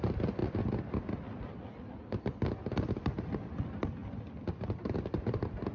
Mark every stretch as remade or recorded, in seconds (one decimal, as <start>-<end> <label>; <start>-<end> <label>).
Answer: 0.0-5.7 recorded